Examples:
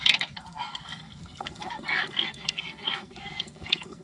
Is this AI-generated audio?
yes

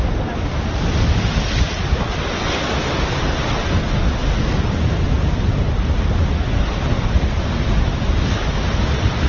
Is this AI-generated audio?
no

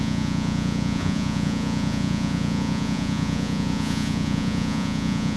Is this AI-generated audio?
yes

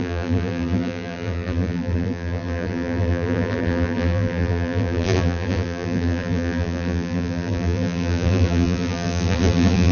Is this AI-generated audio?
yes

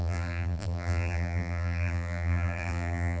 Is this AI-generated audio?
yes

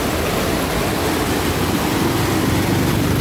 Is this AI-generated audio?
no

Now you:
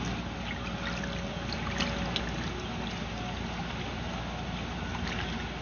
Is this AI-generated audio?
no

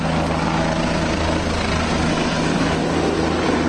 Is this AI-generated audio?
no